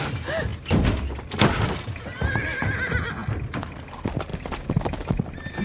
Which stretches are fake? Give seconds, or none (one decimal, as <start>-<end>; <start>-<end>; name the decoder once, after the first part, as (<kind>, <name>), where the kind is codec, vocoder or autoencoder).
none